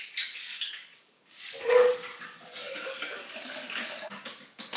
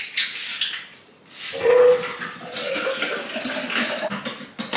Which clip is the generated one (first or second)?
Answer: first